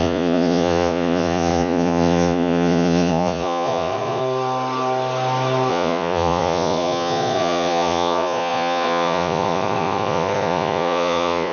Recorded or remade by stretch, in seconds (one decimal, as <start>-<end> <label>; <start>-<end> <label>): 0.0-4.2 remade; 4.2-5.7 recorded; 5.7-11.5 remade